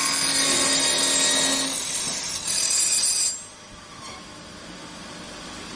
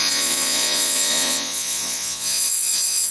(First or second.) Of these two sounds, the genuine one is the first